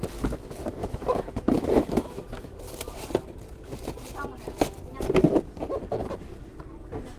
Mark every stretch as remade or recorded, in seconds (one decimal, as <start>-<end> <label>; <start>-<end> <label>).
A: 0.0-0.8 recorded; 0.8-2.6 remade; 2.6-7.2 recorded